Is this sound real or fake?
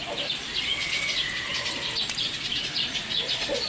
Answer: real